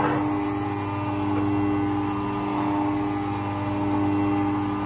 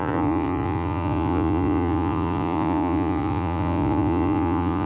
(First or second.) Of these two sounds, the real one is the first